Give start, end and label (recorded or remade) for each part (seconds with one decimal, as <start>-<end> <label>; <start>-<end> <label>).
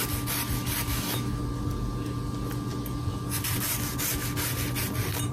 0.0-0.9 recorded; 0.9-1.4 remade; 1.4-5.3 recorded